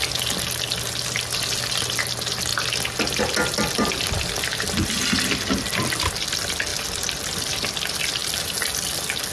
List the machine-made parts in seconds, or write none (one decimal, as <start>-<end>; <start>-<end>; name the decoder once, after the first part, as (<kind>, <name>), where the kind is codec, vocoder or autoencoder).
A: none